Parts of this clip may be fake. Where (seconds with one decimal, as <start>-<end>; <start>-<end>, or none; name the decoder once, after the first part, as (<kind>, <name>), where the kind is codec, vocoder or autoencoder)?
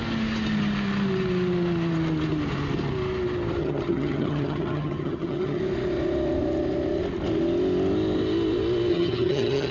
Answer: 3.6-5.6 (vocoder, HiFi-GAN); 8.9-9.7